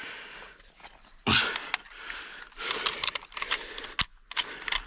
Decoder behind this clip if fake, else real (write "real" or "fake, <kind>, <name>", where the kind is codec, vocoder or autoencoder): real